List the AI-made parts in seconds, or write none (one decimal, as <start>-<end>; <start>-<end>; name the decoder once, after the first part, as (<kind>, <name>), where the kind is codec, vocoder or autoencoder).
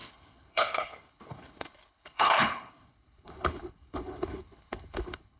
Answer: 0.0-5.4 (codec, HILCodec)